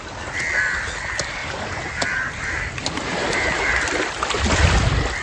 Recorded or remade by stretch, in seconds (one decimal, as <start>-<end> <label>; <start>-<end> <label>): 0.0-1.4 recorded; 1.4-4.5 remade; 4.5-5.2 recorded